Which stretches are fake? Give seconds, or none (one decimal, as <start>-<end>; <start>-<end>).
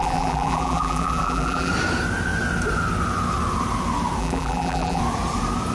0.0-1.7; 4.2-5.0